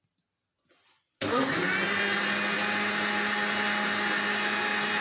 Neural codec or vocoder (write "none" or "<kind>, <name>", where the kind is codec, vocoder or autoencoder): none